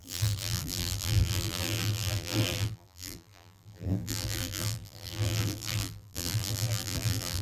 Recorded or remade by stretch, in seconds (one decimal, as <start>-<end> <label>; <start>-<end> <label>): 0.0-7.4 remade